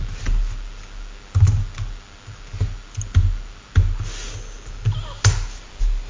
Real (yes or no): yes